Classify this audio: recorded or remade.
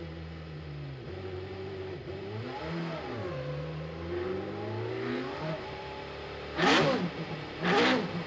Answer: recorded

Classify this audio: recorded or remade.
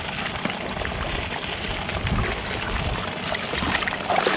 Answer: recorded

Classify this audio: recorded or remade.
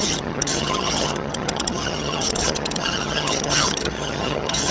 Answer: remade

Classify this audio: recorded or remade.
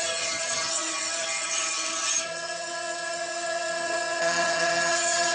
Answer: remade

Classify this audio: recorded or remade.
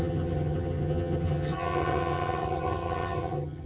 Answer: remade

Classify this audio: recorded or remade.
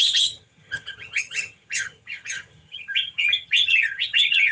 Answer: remade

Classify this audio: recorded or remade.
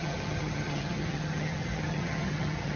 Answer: remade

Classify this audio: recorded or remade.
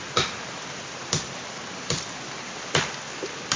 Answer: recorded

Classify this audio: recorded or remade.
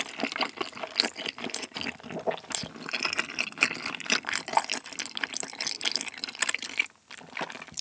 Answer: recorded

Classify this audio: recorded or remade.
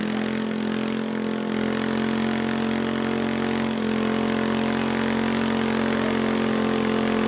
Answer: recorded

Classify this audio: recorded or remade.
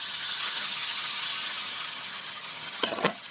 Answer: remade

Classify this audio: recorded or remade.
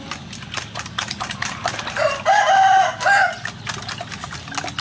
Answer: recorded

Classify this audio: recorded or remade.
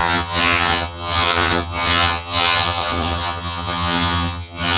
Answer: remade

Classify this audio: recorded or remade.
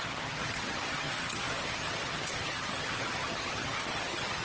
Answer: remade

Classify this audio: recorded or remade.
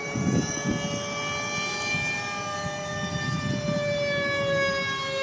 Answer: recorded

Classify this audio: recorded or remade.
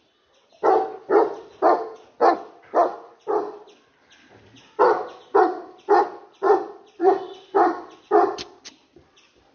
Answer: recorded